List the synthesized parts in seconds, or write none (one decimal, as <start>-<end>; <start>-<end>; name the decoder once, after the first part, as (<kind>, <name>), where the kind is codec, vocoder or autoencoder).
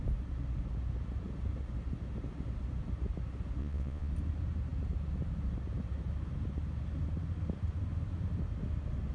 3.6-4.1 (vocoder, Vocos)